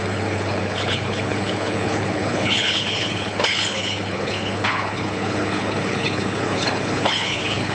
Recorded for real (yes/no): no